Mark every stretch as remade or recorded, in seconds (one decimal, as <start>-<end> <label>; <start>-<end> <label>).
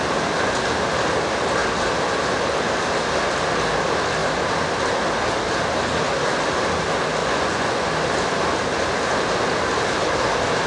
0.0-7.2 recorded; 7.2-7.9 remade; 7.9-10.7 recorded